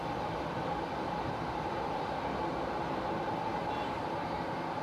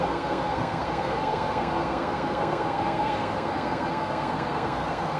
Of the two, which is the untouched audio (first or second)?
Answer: first